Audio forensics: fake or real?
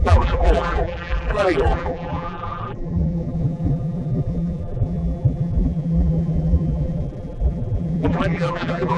fake